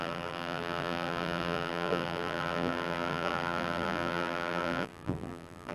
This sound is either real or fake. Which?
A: fake